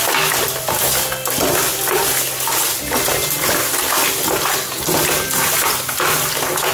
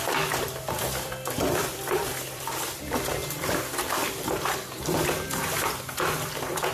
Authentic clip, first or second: first